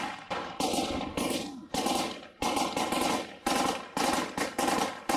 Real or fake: real